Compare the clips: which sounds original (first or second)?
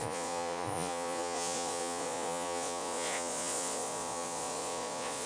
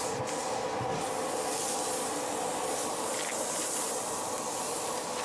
second